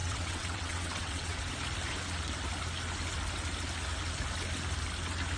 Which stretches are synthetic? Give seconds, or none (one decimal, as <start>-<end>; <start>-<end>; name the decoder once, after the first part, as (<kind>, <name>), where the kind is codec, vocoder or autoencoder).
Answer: 0.0-1.4 (vocoder, WaveNeXt)